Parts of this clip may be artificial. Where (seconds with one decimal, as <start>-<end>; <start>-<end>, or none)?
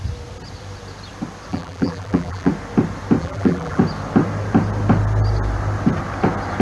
1.5-2.5; 3.2-3.8